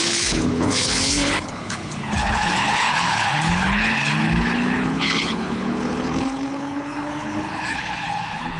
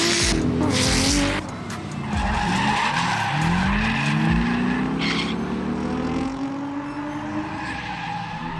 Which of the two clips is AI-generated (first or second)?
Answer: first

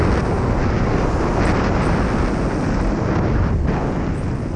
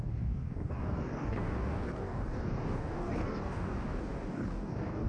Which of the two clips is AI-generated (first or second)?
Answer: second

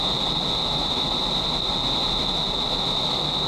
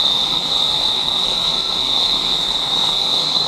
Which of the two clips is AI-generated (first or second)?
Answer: second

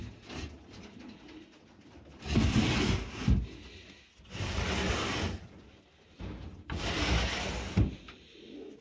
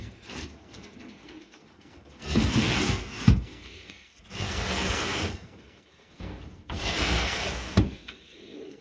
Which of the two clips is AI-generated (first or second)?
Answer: second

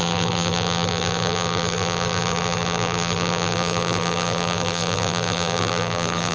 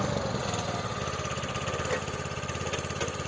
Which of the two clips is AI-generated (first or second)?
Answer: first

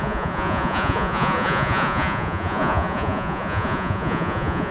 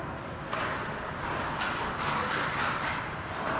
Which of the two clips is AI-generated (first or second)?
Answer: first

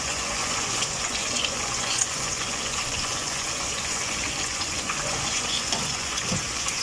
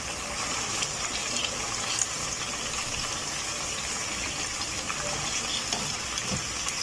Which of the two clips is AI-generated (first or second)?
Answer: first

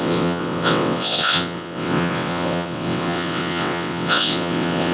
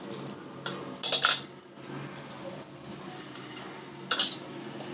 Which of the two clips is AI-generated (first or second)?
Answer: first